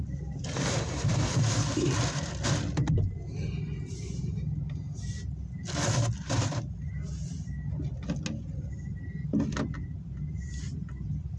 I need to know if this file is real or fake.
real